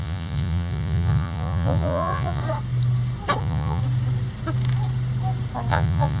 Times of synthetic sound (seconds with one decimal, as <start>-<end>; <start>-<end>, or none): 0.0-2.4; 3.4-3.8; 5.7-6.2